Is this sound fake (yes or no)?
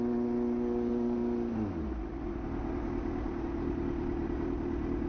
no